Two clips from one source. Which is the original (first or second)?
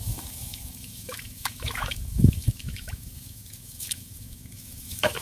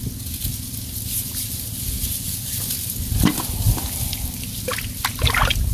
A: second